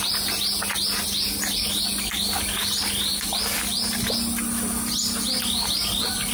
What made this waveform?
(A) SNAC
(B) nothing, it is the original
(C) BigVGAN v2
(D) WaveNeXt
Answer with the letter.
B